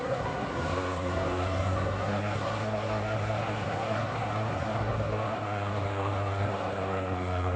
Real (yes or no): no